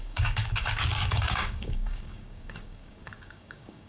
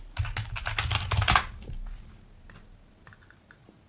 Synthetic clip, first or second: first